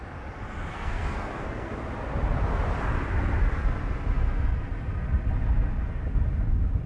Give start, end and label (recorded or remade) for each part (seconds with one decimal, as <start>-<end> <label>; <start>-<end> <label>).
0.0-0.7 recorded; 0.7-1.7 remade; 1.7-6.9 recorded